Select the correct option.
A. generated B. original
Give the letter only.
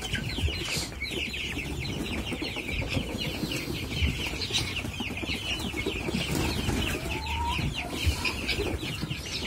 B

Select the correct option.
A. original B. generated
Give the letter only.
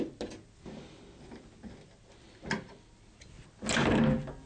A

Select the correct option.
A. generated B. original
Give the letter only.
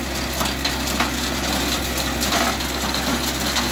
B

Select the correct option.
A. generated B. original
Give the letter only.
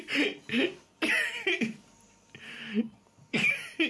B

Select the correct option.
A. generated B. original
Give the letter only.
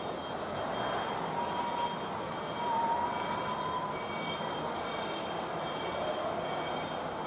B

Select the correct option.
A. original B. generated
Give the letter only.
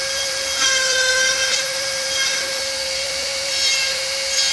B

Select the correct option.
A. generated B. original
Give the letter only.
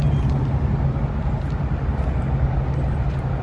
B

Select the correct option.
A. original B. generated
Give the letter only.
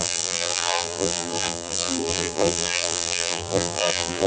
B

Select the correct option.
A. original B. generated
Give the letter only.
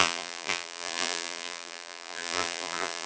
B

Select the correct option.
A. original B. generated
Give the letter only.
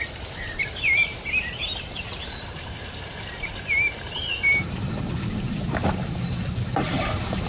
B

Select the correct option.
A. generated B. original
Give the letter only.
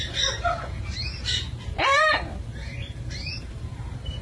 A